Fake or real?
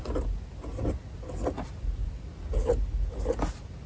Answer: real